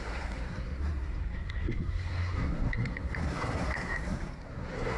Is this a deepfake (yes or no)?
yes